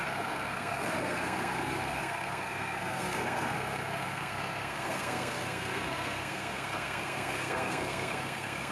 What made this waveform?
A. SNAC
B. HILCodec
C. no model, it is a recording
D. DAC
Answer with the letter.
A